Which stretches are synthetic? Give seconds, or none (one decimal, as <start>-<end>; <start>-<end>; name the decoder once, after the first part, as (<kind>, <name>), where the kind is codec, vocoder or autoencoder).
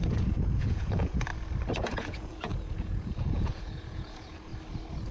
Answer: 0.0-1.3 (vocoder, Vocos); 1.8-4.5